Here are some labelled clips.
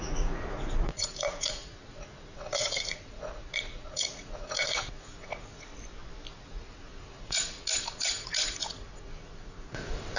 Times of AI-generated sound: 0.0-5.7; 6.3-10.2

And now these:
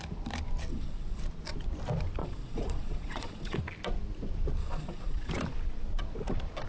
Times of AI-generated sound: 0.7-1.2; 2.2-3.6; 4.6-5.3

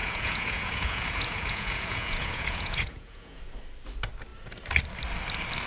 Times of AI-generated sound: 0.0-3.4

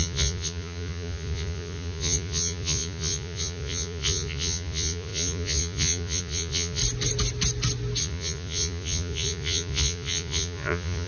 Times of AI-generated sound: 0.0-6.8; 8.0-11.1